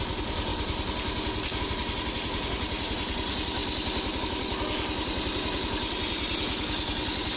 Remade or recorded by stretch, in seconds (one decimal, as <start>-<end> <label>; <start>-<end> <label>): 0.0-7.4 recorded